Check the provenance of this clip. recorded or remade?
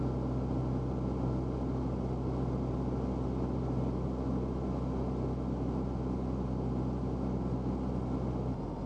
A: recorded